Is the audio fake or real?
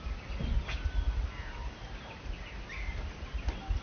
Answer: real